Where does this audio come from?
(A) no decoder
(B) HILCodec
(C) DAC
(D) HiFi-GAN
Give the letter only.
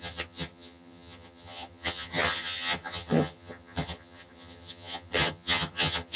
D